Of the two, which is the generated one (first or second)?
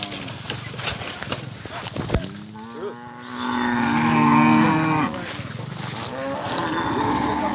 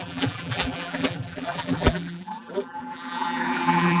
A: second